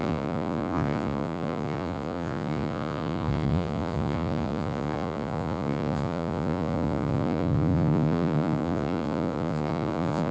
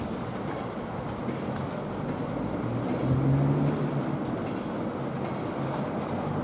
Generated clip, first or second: first